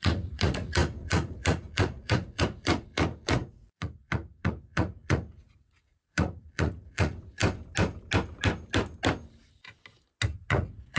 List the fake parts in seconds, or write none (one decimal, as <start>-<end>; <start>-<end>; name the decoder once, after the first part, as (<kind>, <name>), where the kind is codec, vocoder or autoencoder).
0.0-7.4 (vocoder, Vocos); 10.5-11.0